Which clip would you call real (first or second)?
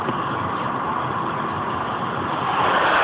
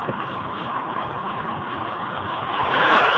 first